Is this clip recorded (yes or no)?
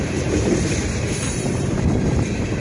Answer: no